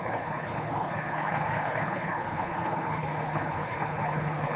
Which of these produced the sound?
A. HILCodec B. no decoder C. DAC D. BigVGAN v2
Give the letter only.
A